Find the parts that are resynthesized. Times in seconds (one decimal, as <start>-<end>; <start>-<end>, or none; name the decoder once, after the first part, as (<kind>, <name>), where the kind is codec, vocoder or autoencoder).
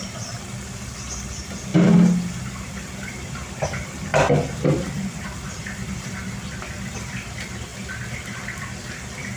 0.0-1.7 (vocoder, BigVGAN v2); 2.4-4.1; 5.2-9.4